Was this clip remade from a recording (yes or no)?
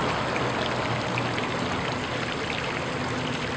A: no